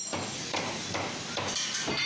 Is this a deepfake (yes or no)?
no